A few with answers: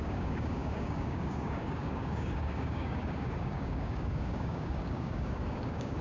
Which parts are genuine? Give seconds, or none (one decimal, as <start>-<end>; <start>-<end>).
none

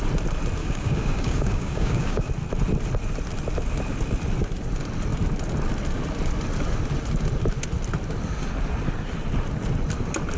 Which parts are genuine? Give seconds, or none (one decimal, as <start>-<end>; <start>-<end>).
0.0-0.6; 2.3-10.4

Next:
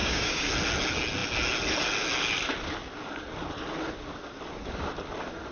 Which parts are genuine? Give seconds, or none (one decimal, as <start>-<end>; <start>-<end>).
0.5-5.5

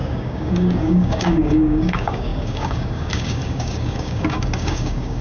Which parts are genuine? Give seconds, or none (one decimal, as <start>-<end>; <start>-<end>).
none

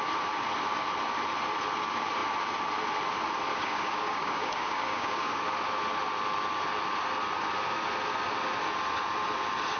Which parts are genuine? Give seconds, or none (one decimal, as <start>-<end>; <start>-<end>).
0.0-3.5; 5.4-9.8

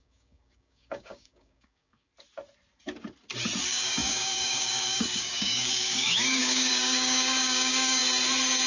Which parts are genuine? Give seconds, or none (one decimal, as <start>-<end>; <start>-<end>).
2.1-3.6; 8.0-8.7

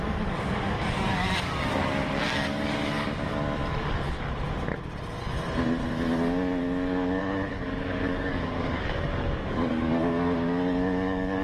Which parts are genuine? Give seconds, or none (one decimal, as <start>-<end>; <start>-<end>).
3.3-7.2

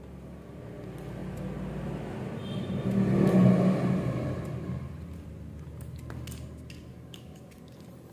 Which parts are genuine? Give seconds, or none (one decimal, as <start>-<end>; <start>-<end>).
0.0-6.9; 7.6-8.1